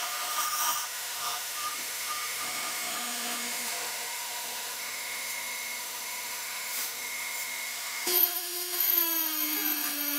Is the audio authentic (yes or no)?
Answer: no